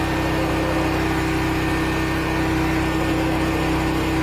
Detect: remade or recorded recorded